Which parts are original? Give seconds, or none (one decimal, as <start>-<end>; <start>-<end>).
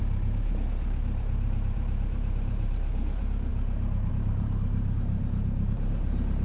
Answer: none